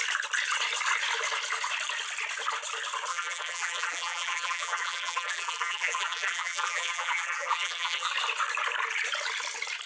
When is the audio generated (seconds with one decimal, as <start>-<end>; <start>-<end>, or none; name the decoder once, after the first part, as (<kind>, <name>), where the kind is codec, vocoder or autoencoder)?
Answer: 3.1-8.1 (vocoder, BigVGAN v2)